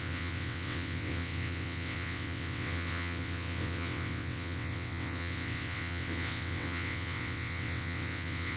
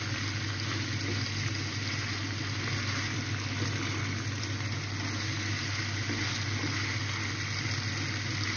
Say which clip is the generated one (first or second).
first